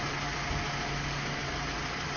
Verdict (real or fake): real